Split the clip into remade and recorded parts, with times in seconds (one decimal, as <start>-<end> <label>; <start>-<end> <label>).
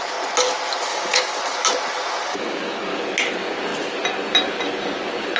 0.0-0.9 recorded; 0.9-1.4 remade; 1.4-2.3 recorded; 2.3-3.0 remade; 3.0-5.4 recorded